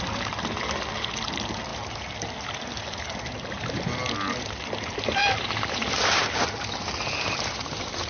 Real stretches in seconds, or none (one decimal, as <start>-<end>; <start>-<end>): 0.0-8.1